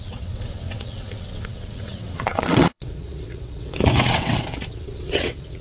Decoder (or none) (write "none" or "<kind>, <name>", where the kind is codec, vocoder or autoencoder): vocoder, WaveNeXt